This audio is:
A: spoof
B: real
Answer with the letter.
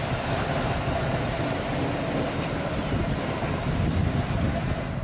B